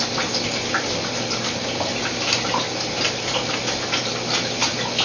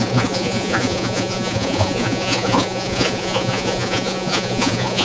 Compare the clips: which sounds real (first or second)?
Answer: first